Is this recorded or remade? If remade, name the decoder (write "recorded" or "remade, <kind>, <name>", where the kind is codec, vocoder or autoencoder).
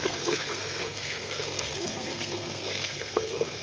remade, codec, SNAC